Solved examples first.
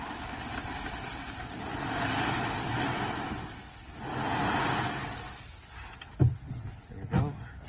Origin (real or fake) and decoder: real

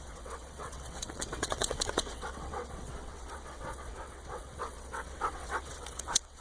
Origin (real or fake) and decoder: fake, vocoder, WaveNeXt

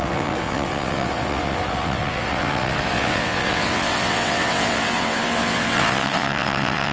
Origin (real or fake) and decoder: fake, vocoder, WaveNeXt